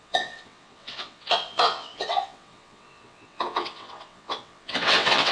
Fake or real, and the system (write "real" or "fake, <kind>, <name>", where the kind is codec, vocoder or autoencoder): fake, vocoder, WaveNeXt